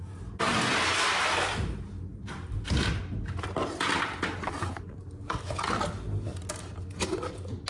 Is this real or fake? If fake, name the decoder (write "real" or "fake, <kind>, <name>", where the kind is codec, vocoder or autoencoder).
real